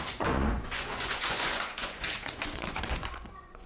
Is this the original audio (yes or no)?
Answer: no